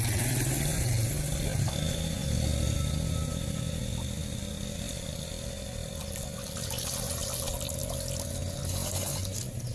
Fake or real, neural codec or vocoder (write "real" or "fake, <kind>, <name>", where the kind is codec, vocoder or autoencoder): real